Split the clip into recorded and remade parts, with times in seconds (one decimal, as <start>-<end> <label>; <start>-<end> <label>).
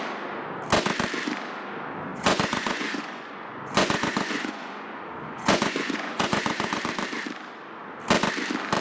0.0-2.1 recorded; 2.1-6.8 remade; 6.8-8.8 recorded